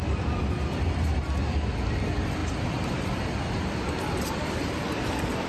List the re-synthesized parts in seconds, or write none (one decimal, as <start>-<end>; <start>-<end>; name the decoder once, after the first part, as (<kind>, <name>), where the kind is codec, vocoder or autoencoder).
2.4-4.3 (vocoder, BigVGAN v2)